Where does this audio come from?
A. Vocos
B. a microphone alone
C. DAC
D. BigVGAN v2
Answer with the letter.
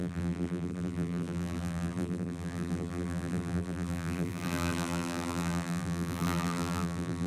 D